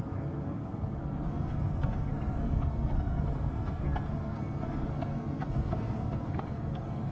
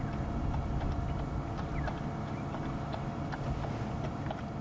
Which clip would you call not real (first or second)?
first